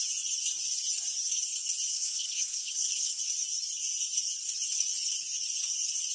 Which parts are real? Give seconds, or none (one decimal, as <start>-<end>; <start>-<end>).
0.0-1.9; 3.2-6.1

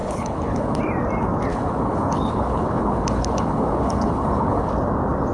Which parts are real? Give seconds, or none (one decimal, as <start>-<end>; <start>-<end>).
0.8-1.5; 4.7-5.3

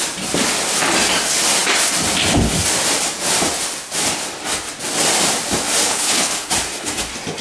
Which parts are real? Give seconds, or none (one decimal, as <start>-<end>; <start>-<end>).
0.0-5.9; 6.5-7.4

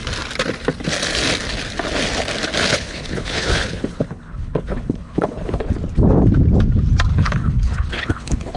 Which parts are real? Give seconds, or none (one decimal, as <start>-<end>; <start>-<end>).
0.0-2.7; 5.7-7.1

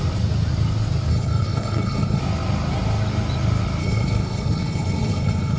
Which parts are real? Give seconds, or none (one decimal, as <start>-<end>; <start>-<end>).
0.0-1.1; 2.2-3.8

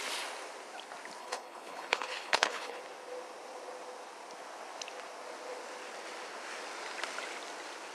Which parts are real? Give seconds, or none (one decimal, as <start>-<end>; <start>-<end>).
0.0-1.2; 2.8-7.9

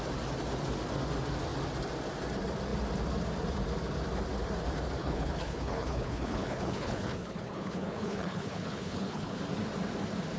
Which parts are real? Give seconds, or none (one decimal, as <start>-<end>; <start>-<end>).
0.0-5.0; 9.4-10.4

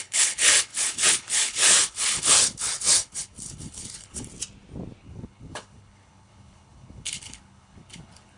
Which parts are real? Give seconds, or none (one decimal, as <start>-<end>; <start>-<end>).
4.3-5.0